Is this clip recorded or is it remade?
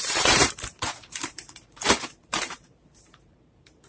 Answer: remade